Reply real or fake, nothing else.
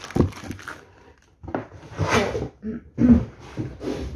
real